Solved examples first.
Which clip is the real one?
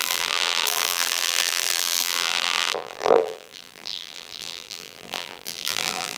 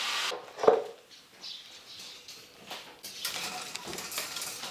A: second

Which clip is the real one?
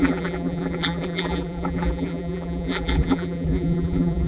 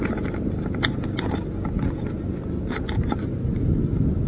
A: second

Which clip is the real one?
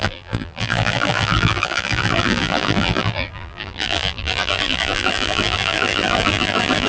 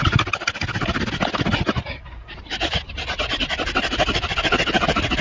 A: second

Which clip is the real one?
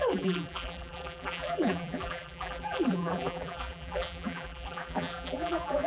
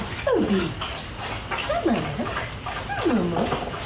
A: second